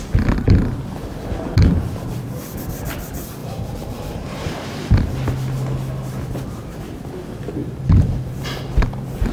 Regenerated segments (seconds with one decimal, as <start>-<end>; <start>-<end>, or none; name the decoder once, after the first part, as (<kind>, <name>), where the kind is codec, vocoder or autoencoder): 3.4-4.9 (vocoder, BigVGAN v2); 7.6-8.9